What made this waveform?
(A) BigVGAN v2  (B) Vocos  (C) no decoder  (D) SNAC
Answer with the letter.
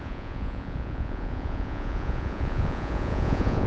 B